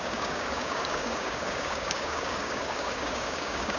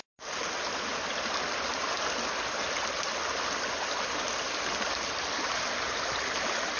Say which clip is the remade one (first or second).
first